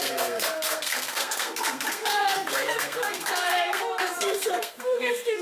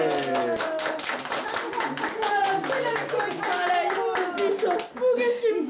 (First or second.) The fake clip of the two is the first